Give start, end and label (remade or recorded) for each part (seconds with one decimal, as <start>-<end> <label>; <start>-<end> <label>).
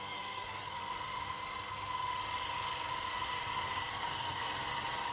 0.0-0.8 remade; 0.8-3.9 recorded; 3.9-4.4 remade; 4.4-5.1 recorded